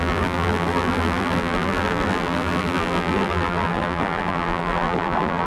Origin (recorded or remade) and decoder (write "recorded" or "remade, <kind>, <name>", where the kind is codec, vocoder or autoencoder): remade, vocoder, BigVGAN v2